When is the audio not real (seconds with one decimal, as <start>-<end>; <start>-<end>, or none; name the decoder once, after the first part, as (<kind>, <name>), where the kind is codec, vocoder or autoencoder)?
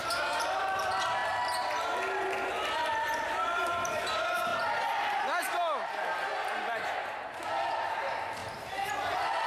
0.0-1.2 (vocoder, BigVGAN v2); 3.2-4.5; 5.9-9.5